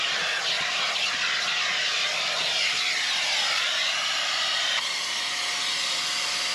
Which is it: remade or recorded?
remade